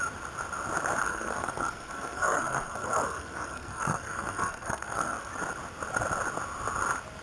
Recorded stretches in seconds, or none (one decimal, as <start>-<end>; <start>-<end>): 0.0-1.0; 5.3-7.2